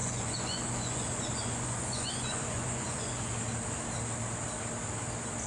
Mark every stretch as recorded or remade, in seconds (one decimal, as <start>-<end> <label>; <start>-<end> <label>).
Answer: 0.0-3.3 remade; 3.3-5.5 recorded